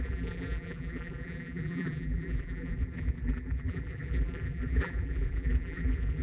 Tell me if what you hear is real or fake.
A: fake